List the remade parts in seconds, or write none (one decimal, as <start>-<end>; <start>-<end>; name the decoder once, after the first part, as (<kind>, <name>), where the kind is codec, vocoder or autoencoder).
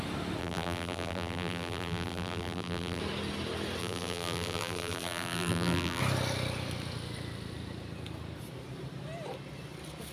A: 0.4-3.0 (vocoder, BigVGAN v2); 3.8-6.0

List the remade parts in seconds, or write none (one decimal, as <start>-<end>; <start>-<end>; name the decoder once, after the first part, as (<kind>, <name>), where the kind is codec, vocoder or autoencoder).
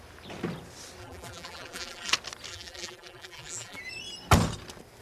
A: 1.0-2.1 (vocoder, BigVGAN v2); 2.5-3.8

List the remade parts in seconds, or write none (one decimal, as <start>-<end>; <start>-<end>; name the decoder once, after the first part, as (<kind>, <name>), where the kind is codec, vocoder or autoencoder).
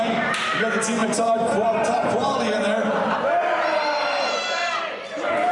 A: 1.0-4.3 (vocoder, BigVGAN v2)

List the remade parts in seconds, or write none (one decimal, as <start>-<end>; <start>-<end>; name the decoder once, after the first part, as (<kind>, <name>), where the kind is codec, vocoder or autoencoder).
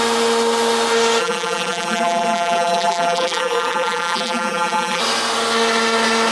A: 1.2-5.0 (vocoder, BigVGAN v2)